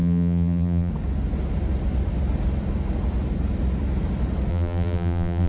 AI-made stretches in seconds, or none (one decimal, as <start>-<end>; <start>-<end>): 0.0-0.9; 4.5-5.5